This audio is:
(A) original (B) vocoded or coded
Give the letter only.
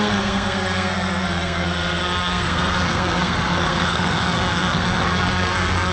B